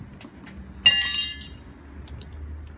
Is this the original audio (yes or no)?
yes